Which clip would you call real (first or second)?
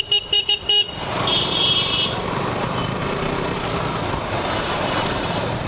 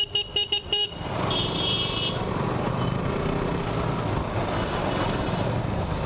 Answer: second